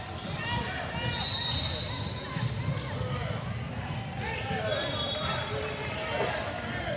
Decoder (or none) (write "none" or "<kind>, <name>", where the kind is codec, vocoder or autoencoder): none